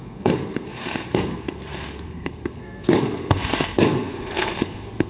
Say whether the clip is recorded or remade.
remade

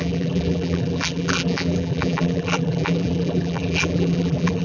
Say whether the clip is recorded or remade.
remade